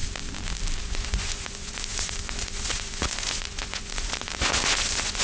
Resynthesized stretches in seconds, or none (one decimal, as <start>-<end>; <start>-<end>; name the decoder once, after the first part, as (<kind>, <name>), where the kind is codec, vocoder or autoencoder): 0.8-5.2 (vocoder, Vocos)